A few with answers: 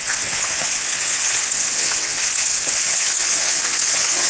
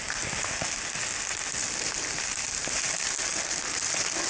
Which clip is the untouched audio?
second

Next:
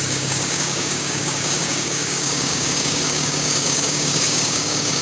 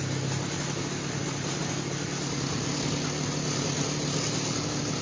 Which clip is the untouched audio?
second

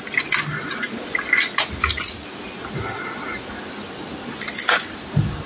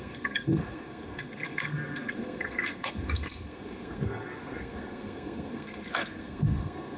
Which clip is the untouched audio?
first